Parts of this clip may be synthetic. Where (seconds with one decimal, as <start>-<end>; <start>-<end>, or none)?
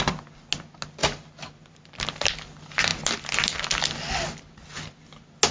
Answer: none